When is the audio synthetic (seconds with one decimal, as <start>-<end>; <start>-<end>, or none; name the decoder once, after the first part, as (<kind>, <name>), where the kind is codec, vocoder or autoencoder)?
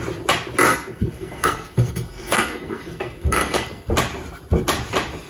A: 0.7-3.9 (codec, SNAC)